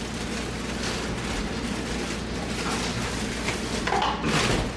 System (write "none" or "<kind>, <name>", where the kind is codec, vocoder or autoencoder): none